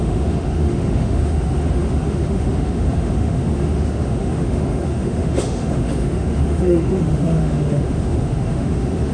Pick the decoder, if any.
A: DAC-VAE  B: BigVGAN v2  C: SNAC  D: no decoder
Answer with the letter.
A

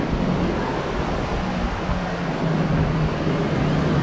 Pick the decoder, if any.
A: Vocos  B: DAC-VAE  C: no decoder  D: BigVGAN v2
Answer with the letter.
C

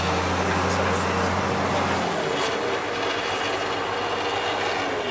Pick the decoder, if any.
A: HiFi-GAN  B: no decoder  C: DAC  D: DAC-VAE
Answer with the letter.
B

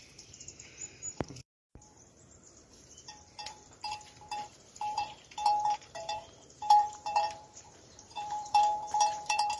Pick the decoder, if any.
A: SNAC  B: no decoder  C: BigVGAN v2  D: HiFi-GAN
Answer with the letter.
C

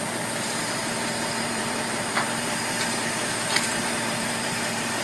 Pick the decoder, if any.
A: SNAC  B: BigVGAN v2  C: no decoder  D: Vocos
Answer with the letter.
B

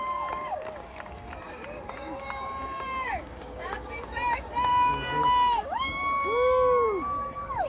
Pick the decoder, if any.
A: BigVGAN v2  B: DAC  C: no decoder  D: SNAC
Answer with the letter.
B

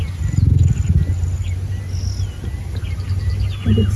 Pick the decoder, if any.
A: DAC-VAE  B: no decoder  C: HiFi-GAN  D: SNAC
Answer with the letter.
B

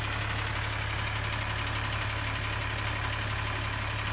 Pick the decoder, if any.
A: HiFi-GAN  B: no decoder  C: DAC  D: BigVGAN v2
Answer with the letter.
B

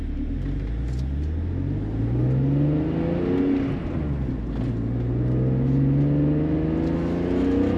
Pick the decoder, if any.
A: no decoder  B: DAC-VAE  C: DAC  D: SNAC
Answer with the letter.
A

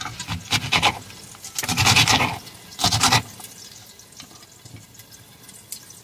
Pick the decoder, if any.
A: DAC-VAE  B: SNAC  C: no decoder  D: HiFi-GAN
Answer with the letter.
C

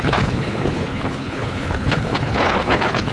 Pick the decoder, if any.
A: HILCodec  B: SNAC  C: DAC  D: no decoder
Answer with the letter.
A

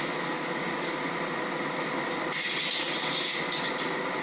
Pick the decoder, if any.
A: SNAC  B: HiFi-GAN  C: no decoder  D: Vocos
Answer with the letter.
C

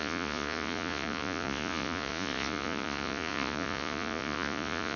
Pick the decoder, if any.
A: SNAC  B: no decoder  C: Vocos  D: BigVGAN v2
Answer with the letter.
C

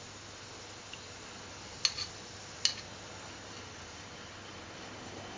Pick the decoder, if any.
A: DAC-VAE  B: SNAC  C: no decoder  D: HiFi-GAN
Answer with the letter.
C